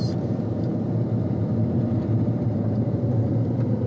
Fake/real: fake